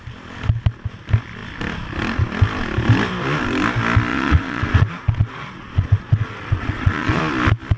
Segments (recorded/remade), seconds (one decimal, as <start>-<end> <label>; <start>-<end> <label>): 0.0-4.1 recorded; 4.1-7.2 remade; 7.2-7.8 recorded